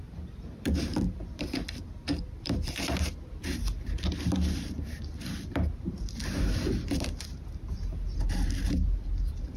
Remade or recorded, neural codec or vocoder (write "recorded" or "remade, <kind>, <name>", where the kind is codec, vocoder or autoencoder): remade, vocoder, BigVGAN v2